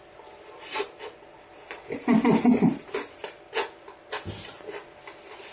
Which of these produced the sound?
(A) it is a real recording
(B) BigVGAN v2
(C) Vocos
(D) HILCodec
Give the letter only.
A